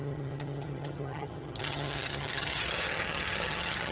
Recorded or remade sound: remade